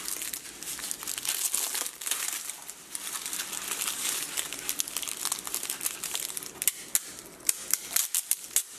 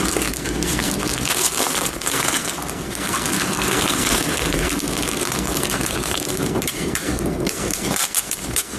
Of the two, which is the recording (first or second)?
first